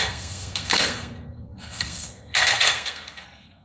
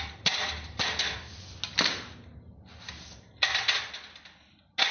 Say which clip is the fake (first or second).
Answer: first